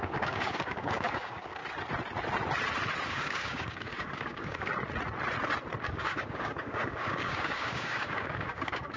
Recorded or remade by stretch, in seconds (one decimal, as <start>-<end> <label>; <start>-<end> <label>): 0.0-1.6 remade; 1.6-3.1 recorded; 3.1-4.7 remade; 4.7-5.8 recorded; 5.8-9.0 remade